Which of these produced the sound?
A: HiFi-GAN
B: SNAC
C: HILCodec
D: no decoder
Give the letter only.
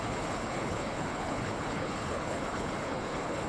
C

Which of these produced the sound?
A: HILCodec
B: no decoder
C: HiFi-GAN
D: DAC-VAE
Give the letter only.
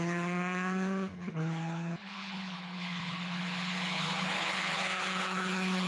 A